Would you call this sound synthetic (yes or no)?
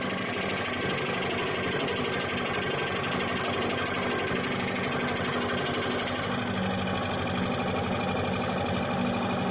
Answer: no